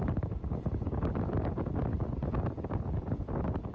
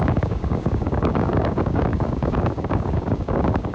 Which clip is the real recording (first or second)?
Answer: first